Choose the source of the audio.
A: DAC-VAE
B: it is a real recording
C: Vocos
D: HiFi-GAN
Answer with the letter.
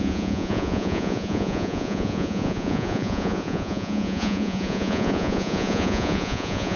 C